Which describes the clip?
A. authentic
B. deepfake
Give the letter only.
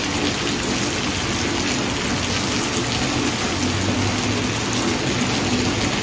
A